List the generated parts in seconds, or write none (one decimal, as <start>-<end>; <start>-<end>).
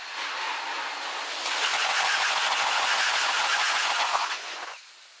1.7-4.8